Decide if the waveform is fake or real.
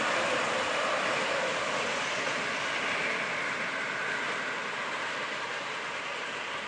real